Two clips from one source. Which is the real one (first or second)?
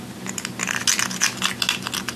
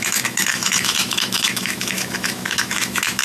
first